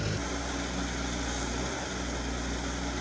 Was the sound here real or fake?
real